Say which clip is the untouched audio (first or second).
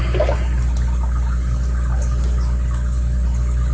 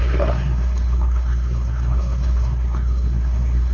first